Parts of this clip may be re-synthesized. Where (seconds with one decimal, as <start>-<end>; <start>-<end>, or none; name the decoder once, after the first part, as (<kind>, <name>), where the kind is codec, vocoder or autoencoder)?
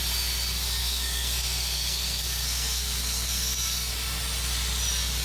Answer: 0.8-3.9 (codec, SNAC)